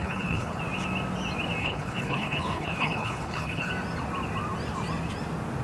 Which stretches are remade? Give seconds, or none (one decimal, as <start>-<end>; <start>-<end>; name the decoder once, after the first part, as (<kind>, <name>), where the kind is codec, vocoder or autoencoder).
0.0-0.6 (codec, HILCodec); 1.6-3.7

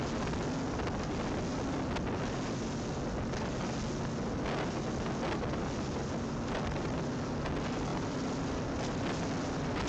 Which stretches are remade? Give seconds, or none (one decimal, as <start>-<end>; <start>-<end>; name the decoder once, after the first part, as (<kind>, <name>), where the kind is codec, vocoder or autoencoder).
7.9-8.7 (vocoder, BigVGAN v2)

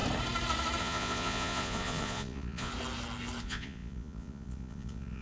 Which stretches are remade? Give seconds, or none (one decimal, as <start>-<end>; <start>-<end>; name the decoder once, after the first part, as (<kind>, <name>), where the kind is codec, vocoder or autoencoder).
0.8-2.7 (vocoder, Vocos); 3.4-5.2

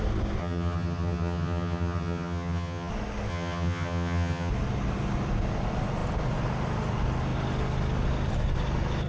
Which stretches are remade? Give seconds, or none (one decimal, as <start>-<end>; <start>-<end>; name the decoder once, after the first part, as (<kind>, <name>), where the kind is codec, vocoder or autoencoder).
0.4-2.9 (vocoder, HiFi-GAN); 3.3-4.5

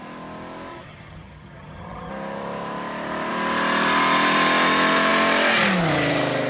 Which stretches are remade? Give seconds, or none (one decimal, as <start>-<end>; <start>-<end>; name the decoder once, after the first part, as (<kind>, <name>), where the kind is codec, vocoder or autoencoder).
0.7-2.1 (vocoder, HiFi-GAN)

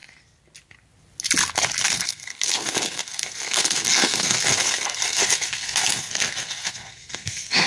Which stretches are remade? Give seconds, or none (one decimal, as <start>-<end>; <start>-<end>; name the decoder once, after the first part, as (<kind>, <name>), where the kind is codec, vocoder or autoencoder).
1.8-7.7 (codec, SNAC)

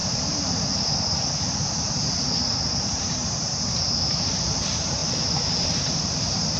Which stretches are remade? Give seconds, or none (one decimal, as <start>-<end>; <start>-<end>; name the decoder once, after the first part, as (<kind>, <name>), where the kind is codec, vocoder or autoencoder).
0.0-3.2 (vocoder, BigVGAN v2); 3.9-5.0; 5.5-6.6